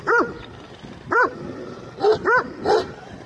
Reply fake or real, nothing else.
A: real